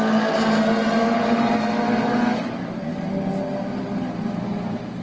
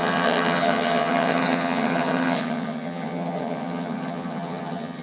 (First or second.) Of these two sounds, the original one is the first